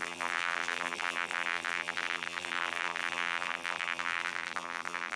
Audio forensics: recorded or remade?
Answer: remade